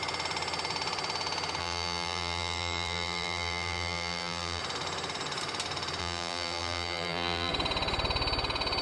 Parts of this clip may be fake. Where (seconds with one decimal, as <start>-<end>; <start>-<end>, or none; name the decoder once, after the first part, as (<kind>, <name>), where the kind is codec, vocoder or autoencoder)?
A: 1.6-4.6 (vocoder, BigVGAN v2); 6.0-7.5